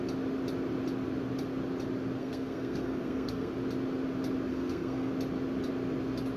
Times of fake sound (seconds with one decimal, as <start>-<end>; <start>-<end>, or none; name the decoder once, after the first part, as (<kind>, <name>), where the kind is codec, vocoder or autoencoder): 2.2-3.5 (codec, SNAC); 4.5-5.1